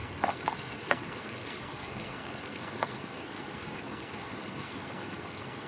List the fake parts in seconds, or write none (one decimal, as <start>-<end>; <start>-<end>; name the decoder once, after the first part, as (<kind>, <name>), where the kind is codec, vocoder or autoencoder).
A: 0.0-5.7 (codec, SNAC)